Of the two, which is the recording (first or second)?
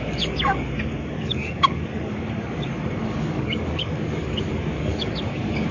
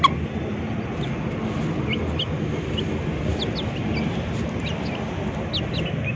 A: second